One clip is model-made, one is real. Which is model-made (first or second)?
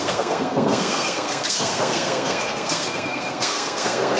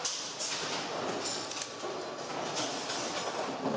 first